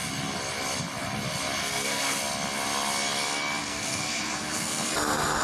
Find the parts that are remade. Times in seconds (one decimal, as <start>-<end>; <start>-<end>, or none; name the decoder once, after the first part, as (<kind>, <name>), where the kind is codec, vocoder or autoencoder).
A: 1.6-2.2 (codec, SNAC); 3.6-4.9